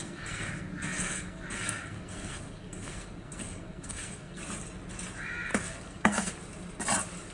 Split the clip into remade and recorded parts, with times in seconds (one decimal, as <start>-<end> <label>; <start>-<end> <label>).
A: 0.0-4.4 remade; 4.4-5.5 recorded; 5.5-6.3 remade; 6.3-7.3 recorded